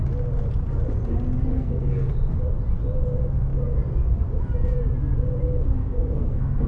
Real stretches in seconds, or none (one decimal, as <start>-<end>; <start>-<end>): 0.0-1.5; 2.1-5.8